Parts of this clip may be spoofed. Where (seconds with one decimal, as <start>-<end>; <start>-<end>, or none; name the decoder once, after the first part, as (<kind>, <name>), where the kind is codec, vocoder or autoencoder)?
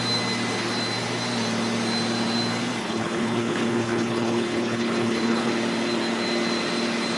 2.8-5.5 (codec, HILCodec)